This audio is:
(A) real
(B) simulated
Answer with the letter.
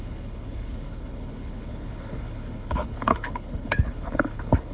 B